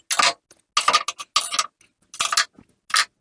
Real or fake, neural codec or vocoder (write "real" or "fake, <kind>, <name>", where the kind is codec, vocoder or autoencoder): real